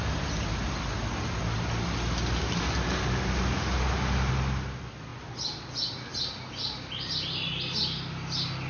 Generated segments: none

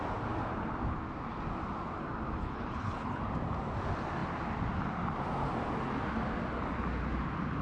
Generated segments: 2.4-3.2 (codec, HILCodec)

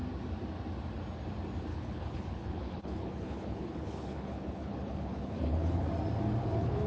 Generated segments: 1.7-5.8 (codec, HILCodec); 6.4-6.9

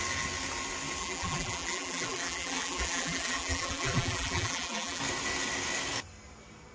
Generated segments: 1.0-5.0 (vocoder, BigVGAN v2)

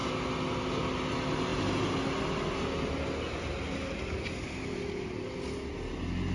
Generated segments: none

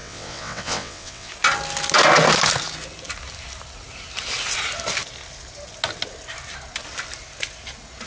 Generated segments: 0.0-1.3 (vocoder, WaveNeXt)

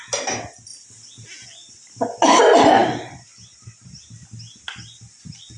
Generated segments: 0.7-2.4 (vocoder, BigVGAN v2); 2.8-3.3

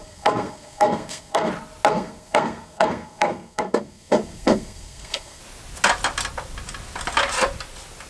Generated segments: 0.0-1.5 (codec, SNAC); 1.9-5.4